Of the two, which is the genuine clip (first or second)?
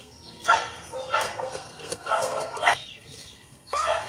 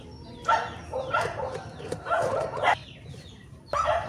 second